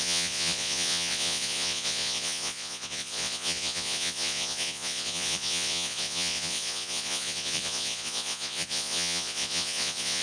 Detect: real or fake fake